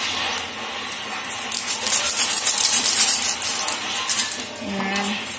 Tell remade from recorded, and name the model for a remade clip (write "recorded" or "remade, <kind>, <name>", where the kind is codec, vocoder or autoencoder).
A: recorded